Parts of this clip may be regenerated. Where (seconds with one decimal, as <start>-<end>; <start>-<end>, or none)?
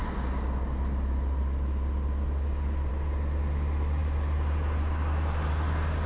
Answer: none